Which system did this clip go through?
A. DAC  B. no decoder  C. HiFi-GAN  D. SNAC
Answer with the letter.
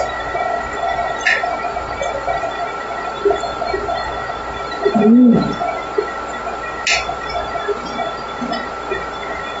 B